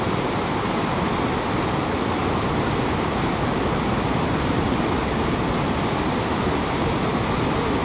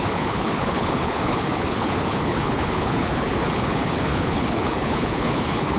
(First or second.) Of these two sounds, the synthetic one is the second